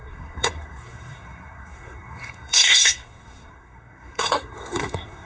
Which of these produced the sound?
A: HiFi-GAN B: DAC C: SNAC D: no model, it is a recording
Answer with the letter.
C